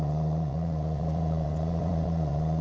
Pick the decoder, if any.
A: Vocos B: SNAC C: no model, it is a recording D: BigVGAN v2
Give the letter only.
A